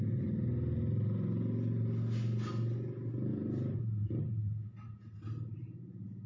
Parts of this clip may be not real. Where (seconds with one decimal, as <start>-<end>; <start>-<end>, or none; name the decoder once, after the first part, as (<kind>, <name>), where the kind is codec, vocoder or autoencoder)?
none